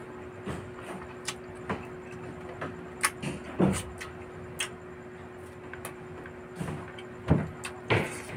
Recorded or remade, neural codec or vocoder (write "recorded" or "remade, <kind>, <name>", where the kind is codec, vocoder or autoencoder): recorded